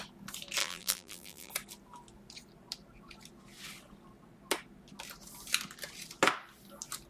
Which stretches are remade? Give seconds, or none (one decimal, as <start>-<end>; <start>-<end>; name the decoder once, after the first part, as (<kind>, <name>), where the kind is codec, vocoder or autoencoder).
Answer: 0.6-1.5 (vocoder, BigVGAN v2)